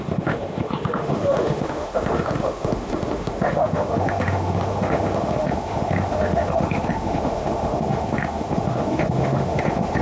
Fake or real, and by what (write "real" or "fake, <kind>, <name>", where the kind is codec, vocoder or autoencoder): fake, autoencoder, DAC-VAE